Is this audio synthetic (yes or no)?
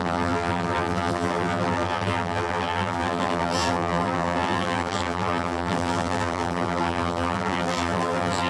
yes